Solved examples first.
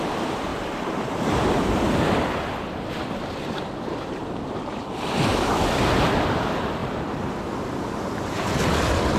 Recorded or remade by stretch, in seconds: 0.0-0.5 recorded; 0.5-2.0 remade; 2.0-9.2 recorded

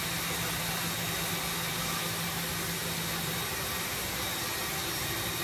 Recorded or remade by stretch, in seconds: 0.0-5.4 recorded

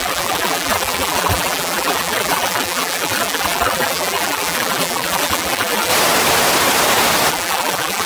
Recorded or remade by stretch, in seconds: 0.0-5.9 remade; 5.9-7.3 recorded; 7.3-8.1 remade